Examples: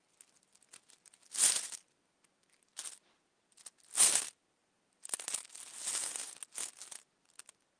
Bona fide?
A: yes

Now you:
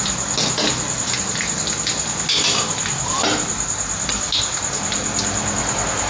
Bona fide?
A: yes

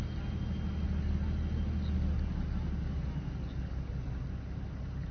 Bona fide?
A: yes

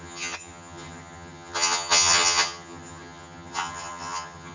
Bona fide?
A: no